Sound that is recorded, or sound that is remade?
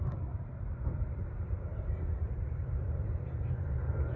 remade